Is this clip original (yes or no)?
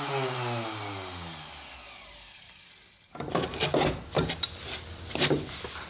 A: yes